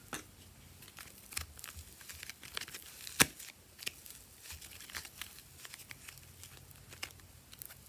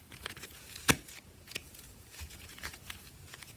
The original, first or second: first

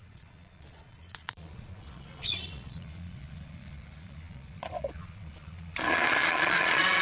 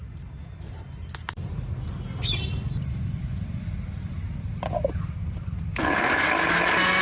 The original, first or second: second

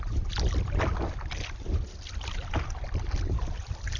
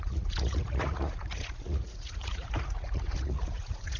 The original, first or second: first